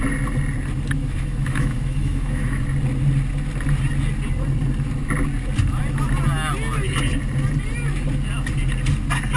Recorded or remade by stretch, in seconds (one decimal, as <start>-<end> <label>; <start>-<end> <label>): 0.0-1.0 recorded; 1.0-2.6 remade; 2.6-9.4 recorded